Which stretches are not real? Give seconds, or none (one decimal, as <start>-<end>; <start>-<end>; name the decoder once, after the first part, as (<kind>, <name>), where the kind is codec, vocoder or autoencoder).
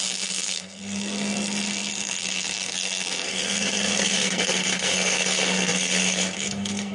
0.0-6.9 (codec, SNAC)